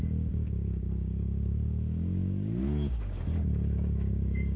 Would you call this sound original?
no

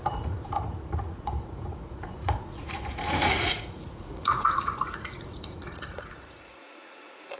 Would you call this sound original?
no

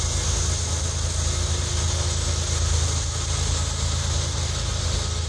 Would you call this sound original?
yes